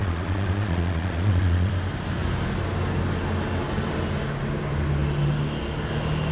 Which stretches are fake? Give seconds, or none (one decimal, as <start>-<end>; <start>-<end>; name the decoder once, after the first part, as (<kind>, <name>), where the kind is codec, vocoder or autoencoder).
0.0-1.7 (vocoder, Vocos)